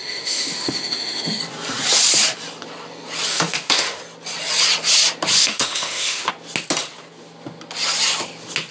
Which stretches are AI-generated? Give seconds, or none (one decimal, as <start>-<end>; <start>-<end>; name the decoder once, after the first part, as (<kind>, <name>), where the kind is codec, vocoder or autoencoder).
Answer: 0.0-1.4 (autoencoder, DAC-VAE); 3.3-4.0; 5.4-6.3